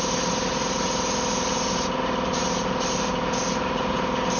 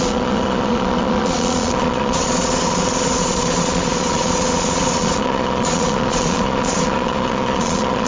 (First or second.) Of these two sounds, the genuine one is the first